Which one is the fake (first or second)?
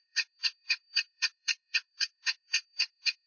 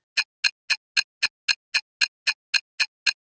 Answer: first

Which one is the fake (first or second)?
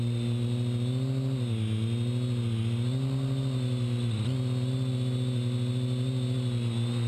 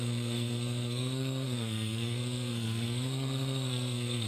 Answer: second